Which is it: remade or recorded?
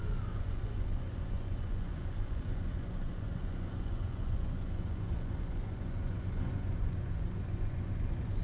remade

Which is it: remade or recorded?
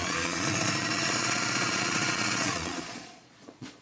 remade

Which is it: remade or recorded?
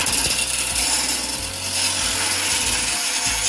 recorded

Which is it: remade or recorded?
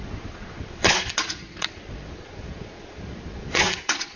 remade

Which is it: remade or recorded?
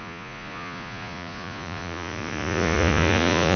remade